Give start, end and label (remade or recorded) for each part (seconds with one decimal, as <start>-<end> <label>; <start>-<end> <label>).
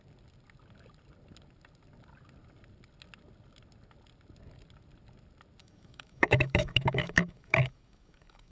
0.0-5.6 recorded; 5.6-8.5 remade